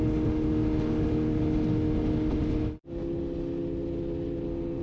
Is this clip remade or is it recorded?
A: recorded